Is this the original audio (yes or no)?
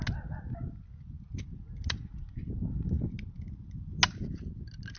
yes